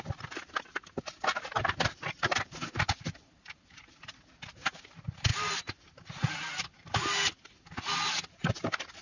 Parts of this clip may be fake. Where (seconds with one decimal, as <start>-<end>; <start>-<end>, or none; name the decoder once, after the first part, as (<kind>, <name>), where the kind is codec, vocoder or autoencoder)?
none